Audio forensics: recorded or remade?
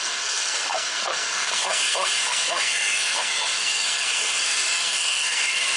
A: remade